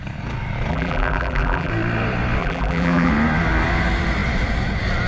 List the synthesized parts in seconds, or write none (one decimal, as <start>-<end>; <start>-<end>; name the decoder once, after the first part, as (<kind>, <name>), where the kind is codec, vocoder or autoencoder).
0.7-1.7 (vocoder, BigVGAN v2); 2.4-3.1